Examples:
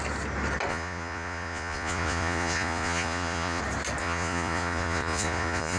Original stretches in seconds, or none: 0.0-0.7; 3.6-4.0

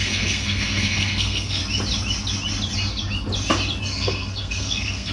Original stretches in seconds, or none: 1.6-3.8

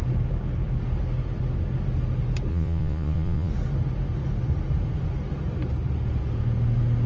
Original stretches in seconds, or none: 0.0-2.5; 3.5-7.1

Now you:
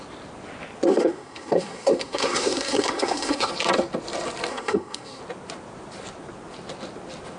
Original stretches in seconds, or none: 0.0-0.9; 3.5-4.5; 5.2-7.4